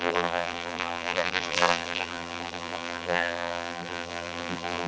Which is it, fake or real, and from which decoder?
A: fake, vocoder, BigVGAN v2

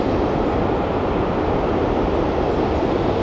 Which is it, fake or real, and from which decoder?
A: real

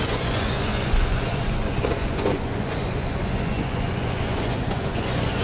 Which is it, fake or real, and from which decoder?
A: fake, vocoder, Vocos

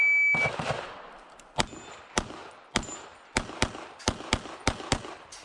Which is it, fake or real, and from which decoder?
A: real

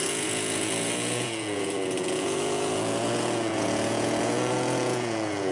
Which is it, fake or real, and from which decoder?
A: fake, vocoder, Vocos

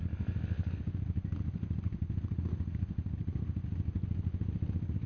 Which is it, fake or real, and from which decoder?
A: real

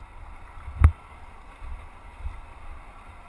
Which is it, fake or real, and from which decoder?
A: real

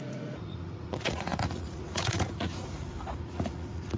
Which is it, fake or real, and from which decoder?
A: fake, vocoder, Vocos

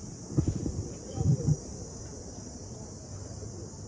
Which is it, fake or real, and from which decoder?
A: fake, vocoder, BigVGAN v2